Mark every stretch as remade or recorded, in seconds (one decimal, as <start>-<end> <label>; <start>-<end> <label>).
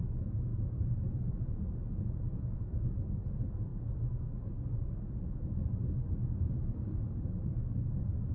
0.0-0.5 remade; 0.5-1.1 recorded; 1.1-3.7 remade; 3.7-8.3 recorded